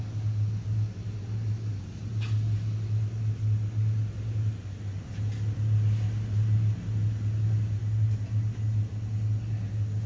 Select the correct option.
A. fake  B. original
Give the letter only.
B